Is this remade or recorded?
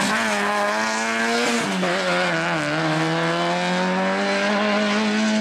recorded